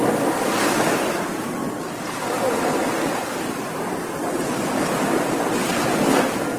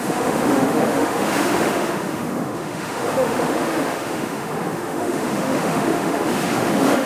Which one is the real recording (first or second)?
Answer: first